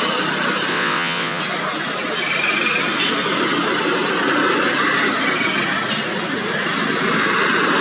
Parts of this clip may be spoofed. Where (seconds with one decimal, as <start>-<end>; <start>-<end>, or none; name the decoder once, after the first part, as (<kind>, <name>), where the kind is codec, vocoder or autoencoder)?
0.7-1.4 (vocoder, WaveNeXt)